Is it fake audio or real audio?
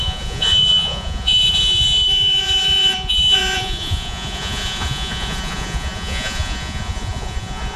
fake